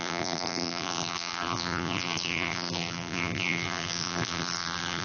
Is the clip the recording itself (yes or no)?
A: no